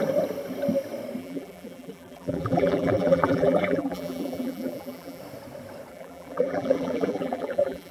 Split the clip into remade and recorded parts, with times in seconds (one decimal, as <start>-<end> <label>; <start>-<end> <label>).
0.0-1.2 recorded; 1.2-5.2 remade; 5.2-5.9 recorded; 5.9-7.9 remade